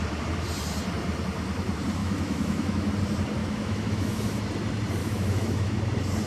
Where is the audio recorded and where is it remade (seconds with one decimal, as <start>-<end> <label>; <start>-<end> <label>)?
0.0-2.0 recorded; 2.0-2.9 remade; 2.9-3.4 recorded; 3.4-4.4 remade; 4.4-5.0 recorded; 5.0-5.8 remade; 5.8-6.3 recorded